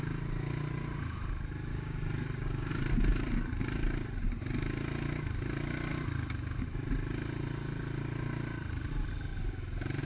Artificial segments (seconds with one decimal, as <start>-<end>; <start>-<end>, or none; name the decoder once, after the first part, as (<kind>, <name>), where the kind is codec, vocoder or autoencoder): 1.7-2.7 (codec, DAC)